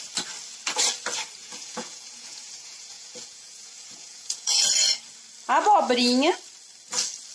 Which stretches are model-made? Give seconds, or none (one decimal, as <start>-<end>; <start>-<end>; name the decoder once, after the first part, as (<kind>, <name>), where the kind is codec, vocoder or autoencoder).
1.4-4.7 (vocoder, Vocos)